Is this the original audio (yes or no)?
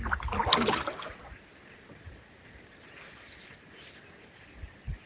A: yes